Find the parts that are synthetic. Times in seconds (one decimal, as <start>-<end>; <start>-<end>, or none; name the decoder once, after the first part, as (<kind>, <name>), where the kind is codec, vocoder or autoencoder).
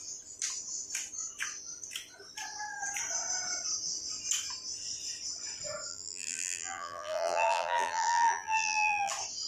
5.9-9.1 (vocoder, BigVGAN v2)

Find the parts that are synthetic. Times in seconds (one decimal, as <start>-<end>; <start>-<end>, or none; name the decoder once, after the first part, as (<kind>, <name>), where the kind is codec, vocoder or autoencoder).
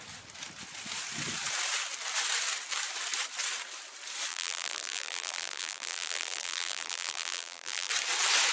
4.3-7.9 (vocoder, BigVGAN v2)